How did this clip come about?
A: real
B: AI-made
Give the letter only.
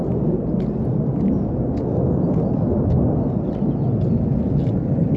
A